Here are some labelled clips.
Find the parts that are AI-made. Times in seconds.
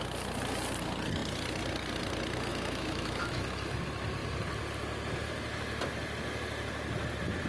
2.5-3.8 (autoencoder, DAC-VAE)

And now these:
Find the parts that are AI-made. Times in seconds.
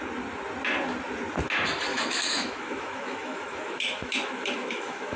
1.9-5.2 (autoencoder, DAC-VAE)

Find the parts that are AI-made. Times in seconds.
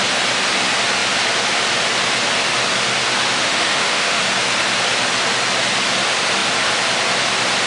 3.4-4.2 (autoencoder, DAC-VAE)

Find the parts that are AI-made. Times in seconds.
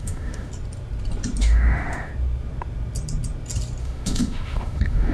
0.0-0.5 (autoencoder, DAC-VAE); 1.4-2.1; 3.8-5.1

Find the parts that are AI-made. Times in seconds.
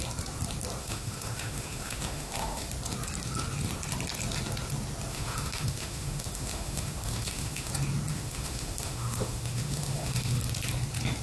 0.8-2.7 (autoencoder, DAC-VAE); 5.1-7.7; 8.1-10.4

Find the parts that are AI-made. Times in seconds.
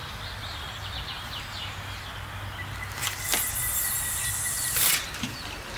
none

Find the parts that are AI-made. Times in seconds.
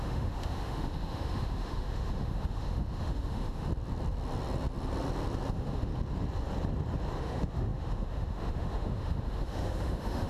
0.0-3.7 (autoencoder, DAC-VAE); 5.5-5.9; 7.2-10.3